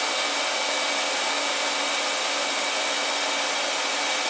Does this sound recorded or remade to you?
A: recorded